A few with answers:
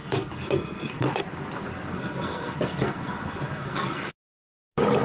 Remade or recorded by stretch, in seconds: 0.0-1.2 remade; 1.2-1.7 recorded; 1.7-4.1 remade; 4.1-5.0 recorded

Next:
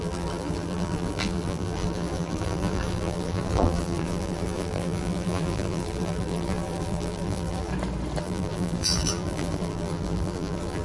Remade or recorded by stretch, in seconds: 0.0-7.7 remade; 7.7-8.2 recorded; 8.2-10.8 remade

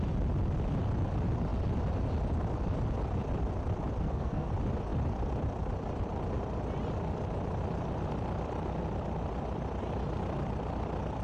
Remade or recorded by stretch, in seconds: 0.0-4.0 recorded; 4.0-4.5 remade; 4.5-11.2 recorded

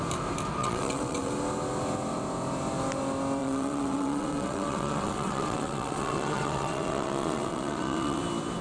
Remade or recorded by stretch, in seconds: 0.0-0.6 recorded; 0.6-1.3 remade; 1.3-3.4 recorded; 3.4-8.2 remade; 8.2-8.6 recorded

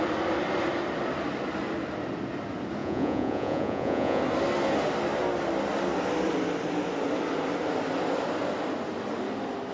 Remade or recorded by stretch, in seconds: 0.0-2.8 recorded; 2.8-4.2 remade; 4.2-9.7 recorded